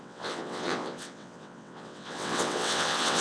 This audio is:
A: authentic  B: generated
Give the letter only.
B